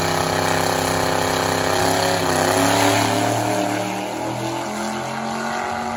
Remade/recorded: recorded